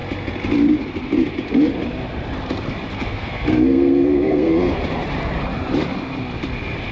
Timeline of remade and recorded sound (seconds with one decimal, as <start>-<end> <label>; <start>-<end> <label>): 0.0-2.9 recorded; 2.9-4.5 remade; 4.5-6.9 recorded